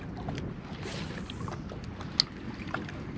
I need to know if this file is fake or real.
real